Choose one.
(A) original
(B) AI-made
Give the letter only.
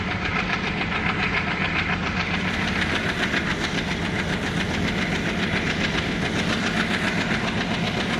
A